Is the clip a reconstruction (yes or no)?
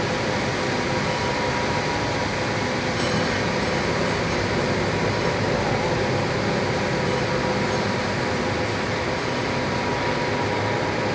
no